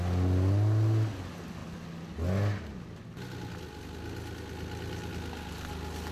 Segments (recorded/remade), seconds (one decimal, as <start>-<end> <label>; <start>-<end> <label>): 0.0-6.1 recorded